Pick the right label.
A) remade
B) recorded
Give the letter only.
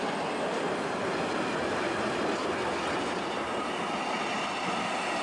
B